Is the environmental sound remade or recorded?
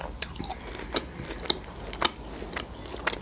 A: recorded